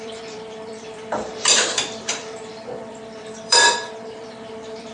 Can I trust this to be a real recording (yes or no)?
no